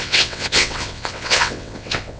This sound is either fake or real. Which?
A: fake